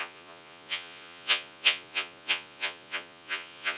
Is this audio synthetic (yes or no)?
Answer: yes